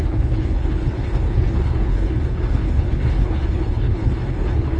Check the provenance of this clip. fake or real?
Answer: fake